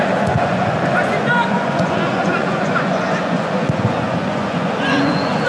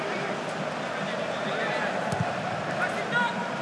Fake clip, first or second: first